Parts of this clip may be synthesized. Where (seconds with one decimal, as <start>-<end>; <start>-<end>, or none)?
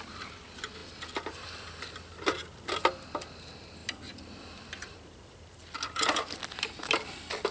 none